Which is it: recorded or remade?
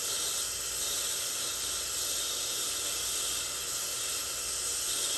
recorded